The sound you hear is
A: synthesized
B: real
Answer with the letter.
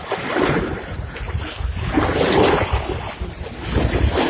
B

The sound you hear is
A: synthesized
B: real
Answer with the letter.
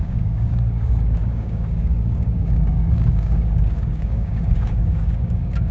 A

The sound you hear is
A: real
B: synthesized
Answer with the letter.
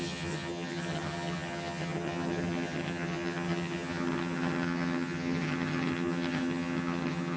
B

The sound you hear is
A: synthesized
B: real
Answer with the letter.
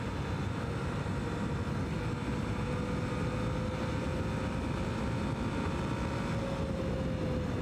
B